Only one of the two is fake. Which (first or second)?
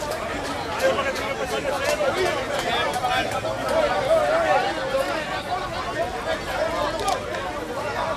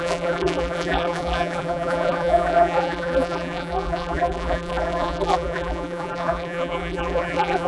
second